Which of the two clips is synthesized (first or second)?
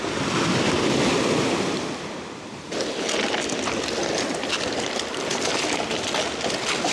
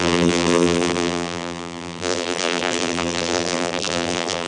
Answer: second